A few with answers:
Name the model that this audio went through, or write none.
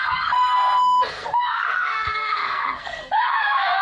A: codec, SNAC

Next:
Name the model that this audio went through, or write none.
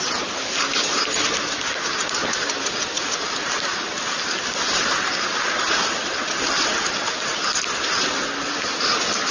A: none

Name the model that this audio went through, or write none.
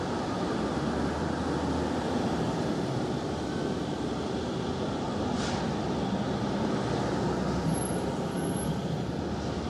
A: none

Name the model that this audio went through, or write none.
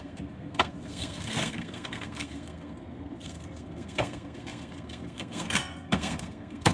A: codec, SNAC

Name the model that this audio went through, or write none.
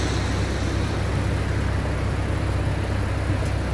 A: none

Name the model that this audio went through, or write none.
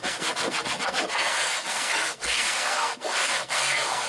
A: codec, SNAC